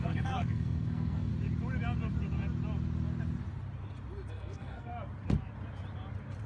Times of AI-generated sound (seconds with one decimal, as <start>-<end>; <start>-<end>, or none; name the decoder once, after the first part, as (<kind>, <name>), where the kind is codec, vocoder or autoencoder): 0.0-1.3 (codec, SNAC); 4.3-4.9